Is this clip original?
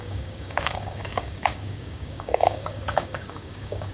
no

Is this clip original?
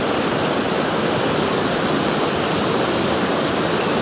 yes